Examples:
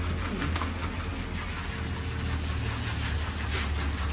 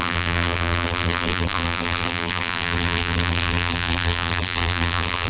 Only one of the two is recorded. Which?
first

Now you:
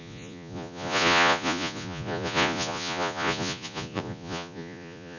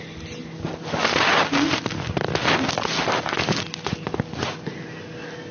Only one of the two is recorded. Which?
second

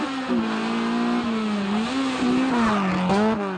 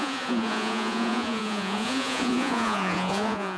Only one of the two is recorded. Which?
first